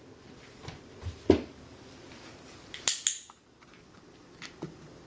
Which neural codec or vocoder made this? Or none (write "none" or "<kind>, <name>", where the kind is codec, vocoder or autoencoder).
none